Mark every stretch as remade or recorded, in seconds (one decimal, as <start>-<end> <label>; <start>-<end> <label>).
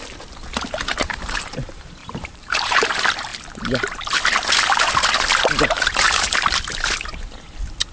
0.0-0.9 recorded; 0.9-1.5 remade; 1.5-2.0 recorded; 2.0-2.9 remade; 2.9-7.9 recorded